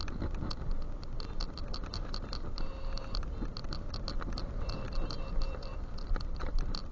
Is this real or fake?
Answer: real